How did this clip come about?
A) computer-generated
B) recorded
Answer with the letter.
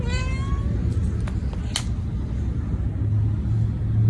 B